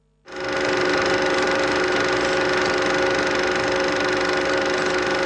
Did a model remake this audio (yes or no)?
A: no